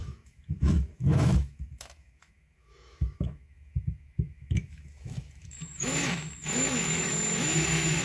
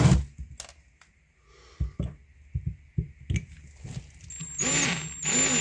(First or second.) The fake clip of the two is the first